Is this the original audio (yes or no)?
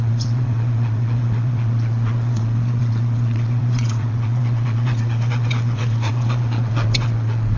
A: no